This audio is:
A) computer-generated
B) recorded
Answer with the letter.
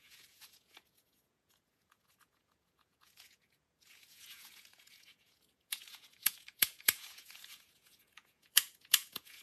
A